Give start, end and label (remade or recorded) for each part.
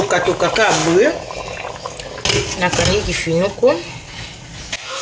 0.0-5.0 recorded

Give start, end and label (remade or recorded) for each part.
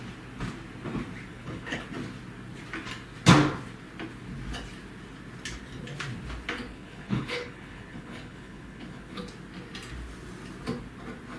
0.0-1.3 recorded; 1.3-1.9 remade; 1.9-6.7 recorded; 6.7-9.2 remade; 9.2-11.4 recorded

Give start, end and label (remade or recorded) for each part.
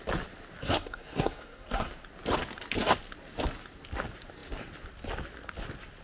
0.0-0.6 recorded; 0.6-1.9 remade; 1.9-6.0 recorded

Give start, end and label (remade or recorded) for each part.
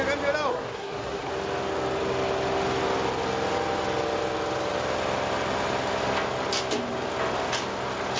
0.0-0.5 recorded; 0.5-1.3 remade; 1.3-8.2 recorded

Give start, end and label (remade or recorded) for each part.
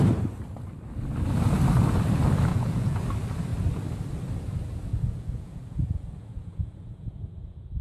0.0-2.5 recorded; 2.5-3.0 remade; 3.0-4.9 recorded; 4.9-7.8 remade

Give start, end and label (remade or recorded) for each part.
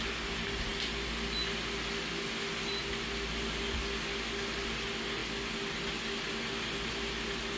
0.0-7.6 recorded